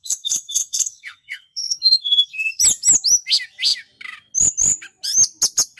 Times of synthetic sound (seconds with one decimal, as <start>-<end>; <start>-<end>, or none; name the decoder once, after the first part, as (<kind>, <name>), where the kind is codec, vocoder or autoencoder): 0.0-2.6 (codec, SNAC)